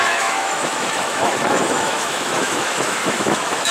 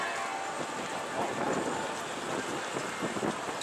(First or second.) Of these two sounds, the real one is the second